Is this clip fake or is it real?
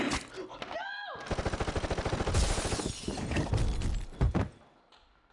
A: real